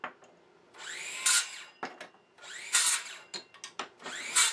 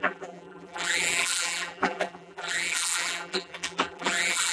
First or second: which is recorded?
first